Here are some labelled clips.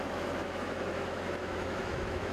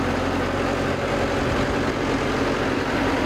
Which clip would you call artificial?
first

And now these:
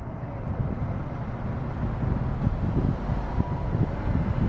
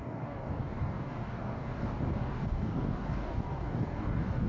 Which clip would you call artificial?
second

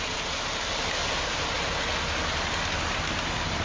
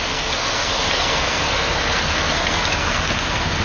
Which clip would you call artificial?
second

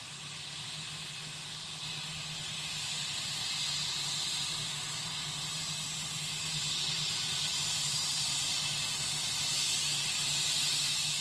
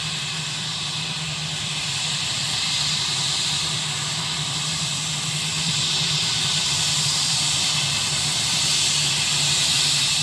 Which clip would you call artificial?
second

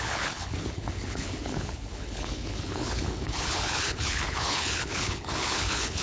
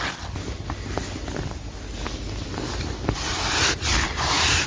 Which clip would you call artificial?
first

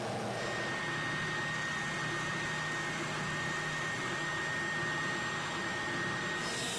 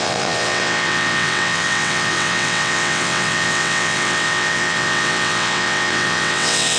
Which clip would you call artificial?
second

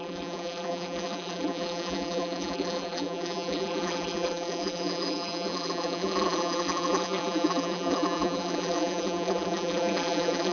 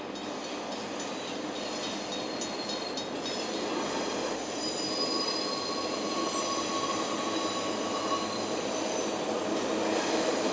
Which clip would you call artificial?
first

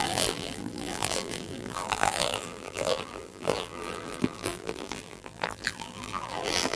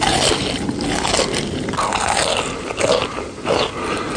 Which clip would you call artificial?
first